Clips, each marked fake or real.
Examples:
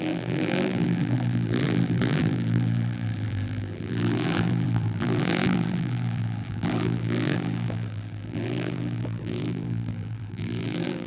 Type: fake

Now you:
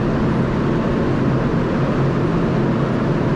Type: real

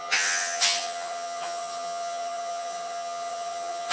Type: fake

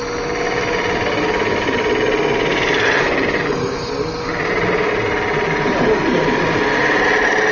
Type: real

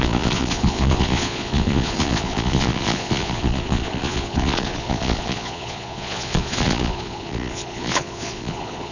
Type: fake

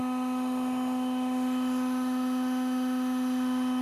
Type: fake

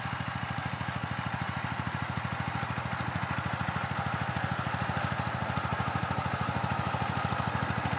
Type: real